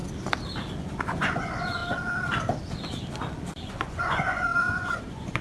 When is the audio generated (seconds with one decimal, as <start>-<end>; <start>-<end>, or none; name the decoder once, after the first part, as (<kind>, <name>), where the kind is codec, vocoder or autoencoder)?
0.8-1.8 (vocoder, Vocos); 3.7-5.4